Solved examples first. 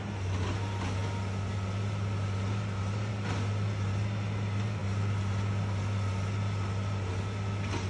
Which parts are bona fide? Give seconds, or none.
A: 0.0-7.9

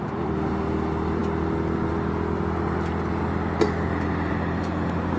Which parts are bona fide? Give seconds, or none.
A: 0.0-5.2

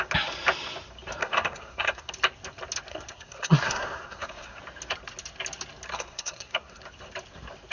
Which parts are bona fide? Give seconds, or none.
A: 0.0-1.2; 2.1-2.9; 4.6-5.9; 6.8-7.7

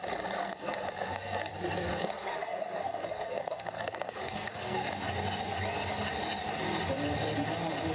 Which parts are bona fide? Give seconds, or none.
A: 0.0-0.4; 1.5-1.9; 4.9-7.9

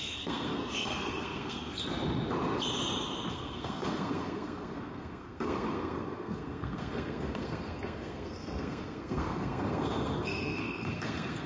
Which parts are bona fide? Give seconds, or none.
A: 1.8-3.3

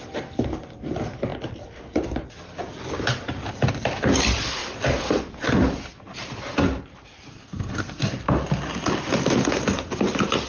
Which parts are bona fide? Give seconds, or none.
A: 0.0-7.3; 8.1-10.5